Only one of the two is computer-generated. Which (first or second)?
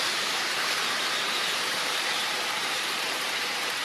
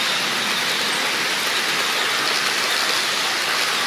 first